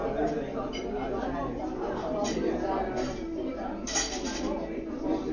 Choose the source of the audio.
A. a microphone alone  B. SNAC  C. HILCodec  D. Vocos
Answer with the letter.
A